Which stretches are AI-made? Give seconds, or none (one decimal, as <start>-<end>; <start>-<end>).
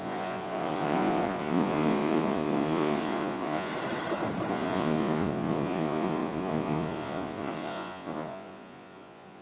0.0-3.7; 4.5-9.4